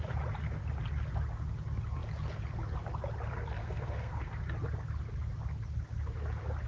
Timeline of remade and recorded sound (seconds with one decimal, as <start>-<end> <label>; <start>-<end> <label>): 0.0-3.6 recorded; 3.6-4.4 remade; 4.4-6.7 recorded